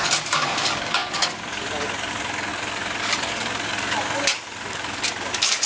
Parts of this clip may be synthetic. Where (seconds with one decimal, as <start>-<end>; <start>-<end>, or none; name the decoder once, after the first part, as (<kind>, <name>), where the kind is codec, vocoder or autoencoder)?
0.0-5.7 (codec, DAC)

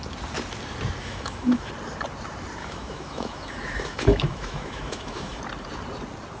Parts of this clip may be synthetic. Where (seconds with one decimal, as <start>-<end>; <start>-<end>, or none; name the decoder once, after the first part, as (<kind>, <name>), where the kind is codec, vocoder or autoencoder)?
1.0-1.7 (autoencoder, DAC-VAE); 2.6-5.4

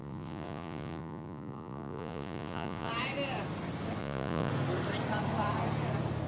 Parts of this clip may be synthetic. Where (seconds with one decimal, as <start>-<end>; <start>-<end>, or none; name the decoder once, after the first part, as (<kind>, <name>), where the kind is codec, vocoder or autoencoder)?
0.0-2.9 (vocoder, Vocos); 4.0-4.5

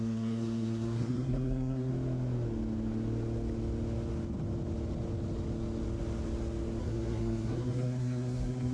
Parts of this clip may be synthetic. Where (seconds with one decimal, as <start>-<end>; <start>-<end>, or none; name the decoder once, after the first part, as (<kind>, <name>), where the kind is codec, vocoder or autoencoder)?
0.0-1.9 (codec, SNAC); 6.8-8.7

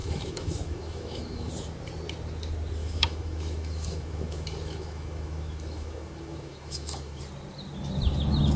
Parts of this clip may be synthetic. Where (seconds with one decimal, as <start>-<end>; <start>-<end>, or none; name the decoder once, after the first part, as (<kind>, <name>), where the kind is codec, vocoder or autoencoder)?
0.0-1.5 (autoencoder, DAC-VAE); 2.8-7.2

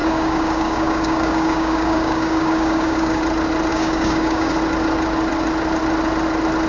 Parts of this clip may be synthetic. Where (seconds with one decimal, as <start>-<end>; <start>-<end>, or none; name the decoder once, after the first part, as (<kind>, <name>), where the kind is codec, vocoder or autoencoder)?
0.0-3.2 (codec, DAC); 3.7-4.5